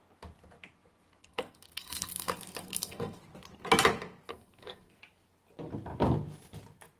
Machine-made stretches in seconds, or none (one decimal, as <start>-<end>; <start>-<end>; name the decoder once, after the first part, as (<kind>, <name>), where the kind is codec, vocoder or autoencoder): 1.2-3.2 (codec, SNAC); 4.3-5.0